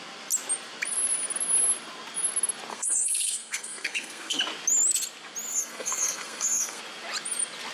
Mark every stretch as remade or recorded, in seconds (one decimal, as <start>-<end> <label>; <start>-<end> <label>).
0.0-2.7 recorded; 2.7-4.4 remade; 4.4-5.5 recorded; 5.5-6.8 remade; 6.8-7.7 recorded